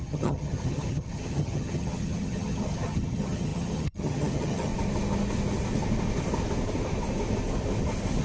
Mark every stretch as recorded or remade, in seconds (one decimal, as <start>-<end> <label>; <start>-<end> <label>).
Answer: 0.0-4.7 remade; 4.7-8.2 recorded